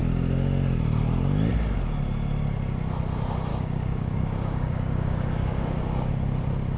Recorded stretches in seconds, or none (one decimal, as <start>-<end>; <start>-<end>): 0.0-3.5; 6.1-6.8

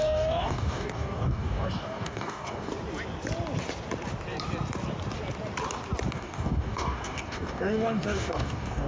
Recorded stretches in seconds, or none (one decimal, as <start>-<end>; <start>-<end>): 2.7-6.1